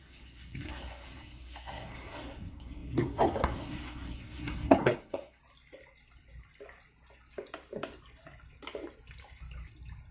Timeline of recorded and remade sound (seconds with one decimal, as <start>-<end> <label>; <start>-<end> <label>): 0.0-5.4 remade; 5.4-10.1 recorded